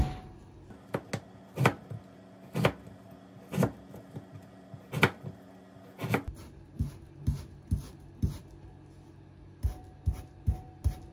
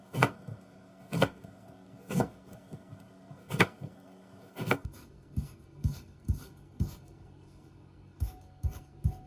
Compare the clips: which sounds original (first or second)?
first